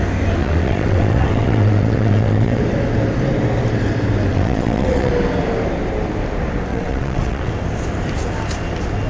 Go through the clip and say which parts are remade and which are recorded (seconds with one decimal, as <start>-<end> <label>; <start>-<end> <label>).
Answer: 0.0-0.4 recorded; 0.4-2.6 remade; 2.6-4.3 recorded; 4.3-5.1 remade; 5.1-6.7 recorded; 6.7-7.5 remade; 7.5-9.1 recorded